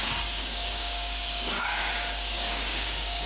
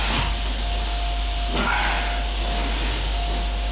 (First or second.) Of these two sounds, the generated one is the first